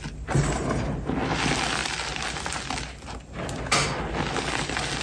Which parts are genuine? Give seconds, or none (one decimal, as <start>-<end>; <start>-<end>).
0.0-5.0